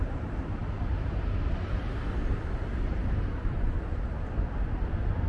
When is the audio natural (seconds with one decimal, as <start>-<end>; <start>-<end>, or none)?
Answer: 0.0-5.3